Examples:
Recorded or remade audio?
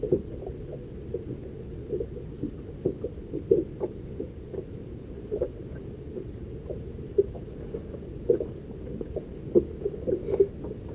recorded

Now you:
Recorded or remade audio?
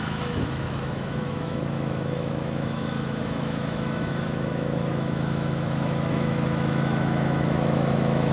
remade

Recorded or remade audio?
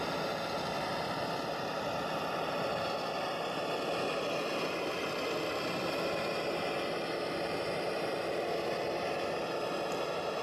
recorded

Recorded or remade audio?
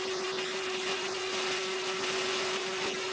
remade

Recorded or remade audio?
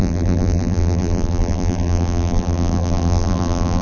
remade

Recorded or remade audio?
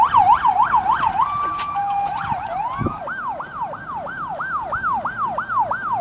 recorded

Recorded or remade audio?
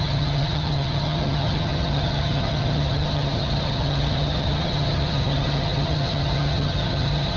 remade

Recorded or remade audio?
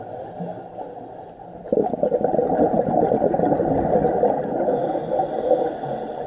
recorded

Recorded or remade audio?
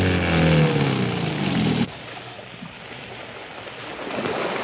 recorded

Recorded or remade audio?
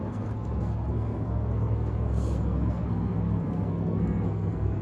remade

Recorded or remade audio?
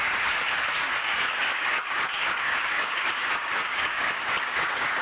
remade